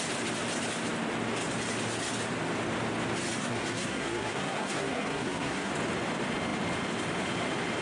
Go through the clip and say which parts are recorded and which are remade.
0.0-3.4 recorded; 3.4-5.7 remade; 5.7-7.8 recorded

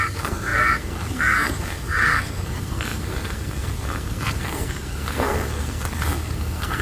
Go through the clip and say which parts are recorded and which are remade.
0.0-6.8 remade

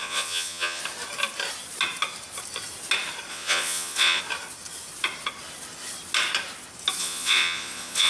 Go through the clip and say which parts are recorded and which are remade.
0.0-0.8 remade; 0.8-3.3 recorded; 3.3-4.2 remade; 4.2-7.0 recorded; 7.0-8.1 remade

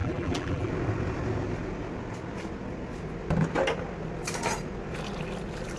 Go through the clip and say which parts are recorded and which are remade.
0.0-0.7 remade; 0.7-5.8 recorded